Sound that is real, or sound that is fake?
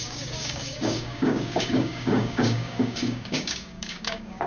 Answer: fake